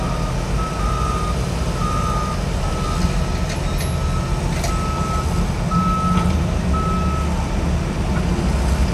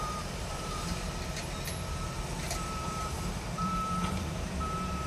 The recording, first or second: first